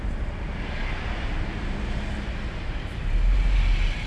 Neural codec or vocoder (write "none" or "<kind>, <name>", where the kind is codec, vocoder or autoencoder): none